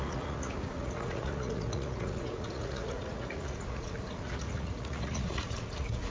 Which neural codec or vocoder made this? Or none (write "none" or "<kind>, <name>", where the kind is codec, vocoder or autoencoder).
vocoder, Vocos